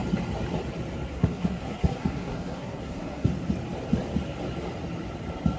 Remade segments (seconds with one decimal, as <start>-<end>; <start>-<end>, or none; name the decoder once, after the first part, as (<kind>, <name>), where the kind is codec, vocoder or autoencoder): 1.1-3.3 (codec, SNAC)